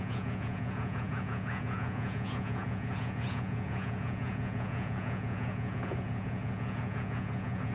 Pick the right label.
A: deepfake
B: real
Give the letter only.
A